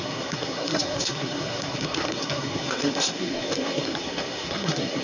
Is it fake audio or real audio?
fake